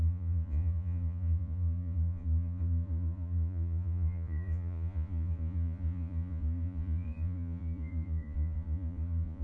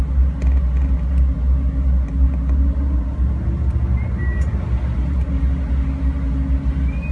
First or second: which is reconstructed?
first